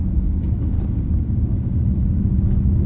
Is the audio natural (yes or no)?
no